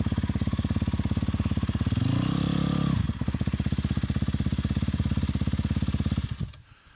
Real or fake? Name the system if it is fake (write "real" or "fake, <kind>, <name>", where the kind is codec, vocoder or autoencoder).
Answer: real